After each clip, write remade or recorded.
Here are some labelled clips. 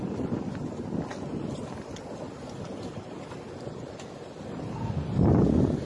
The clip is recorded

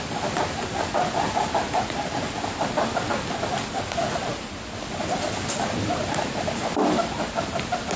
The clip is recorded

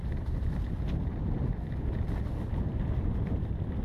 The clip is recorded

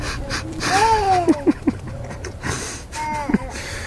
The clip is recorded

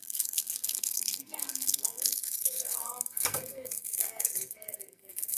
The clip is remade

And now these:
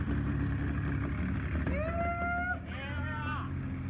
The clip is recorded